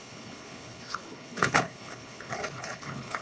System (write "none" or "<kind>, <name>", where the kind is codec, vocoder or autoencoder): codec, HILCodec